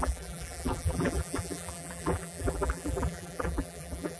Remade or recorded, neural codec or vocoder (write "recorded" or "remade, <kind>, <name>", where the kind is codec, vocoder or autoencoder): remade, vocoder, BigVGAN v2